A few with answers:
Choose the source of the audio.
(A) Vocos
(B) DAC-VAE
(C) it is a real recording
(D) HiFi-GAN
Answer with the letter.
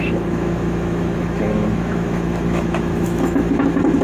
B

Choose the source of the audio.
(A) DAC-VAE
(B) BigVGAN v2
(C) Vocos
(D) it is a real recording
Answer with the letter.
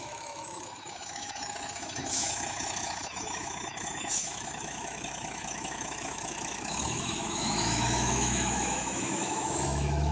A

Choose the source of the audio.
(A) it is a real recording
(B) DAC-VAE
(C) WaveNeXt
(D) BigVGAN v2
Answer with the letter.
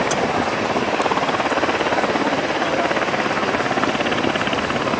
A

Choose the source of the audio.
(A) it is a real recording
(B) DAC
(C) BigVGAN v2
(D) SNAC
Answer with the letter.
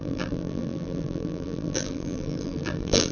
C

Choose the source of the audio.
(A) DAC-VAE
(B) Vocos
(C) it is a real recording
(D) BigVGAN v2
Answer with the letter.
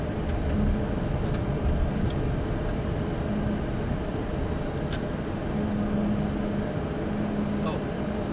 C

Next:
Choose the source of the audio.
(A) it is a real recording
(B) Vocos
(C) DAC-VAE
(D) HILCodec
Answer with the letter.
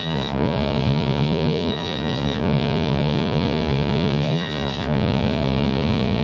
B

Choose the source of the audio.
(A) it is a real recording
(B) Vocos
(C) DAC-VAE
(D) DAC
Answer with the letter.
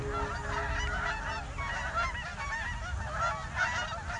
A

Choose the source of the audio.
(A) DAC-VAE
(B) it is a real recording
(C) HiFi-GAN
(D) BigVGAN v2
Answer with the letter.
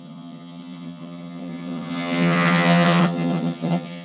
C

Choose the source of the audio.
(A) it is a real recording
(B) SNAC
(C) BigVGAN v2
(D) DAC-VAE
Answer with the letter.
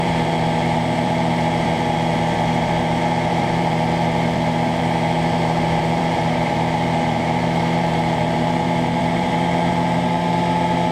C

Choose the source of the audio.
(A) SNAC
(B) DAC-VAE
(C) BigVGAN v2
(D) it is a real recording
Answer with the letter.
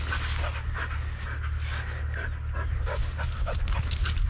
D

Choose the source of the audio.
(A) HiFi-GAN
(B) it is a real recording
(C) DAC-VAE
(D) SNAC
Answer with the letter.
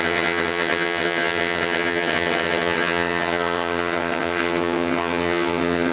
A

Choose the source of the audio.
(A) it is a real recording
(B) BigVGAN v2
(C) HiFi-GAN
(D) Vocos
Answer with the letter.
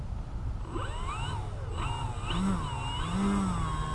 A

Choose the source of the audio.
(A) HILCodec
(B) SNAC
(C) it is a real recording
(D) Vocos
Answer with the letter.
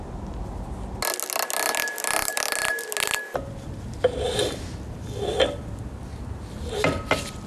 C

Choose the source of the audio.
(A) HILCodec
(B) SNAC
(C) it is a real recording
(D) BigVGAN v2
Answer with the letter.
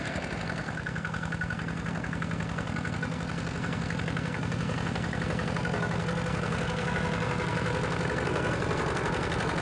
B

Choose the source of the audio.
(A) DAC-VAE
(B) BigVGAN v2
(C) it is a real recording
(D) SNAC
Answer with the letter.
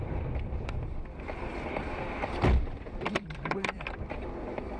B